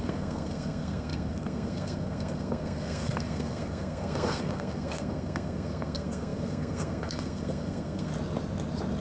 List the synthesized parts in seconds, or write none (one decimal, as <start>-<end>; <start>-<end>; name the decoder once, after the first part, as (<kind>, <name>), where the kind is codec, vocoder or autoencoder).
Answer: 0.0-8.1 (codec, SNAC)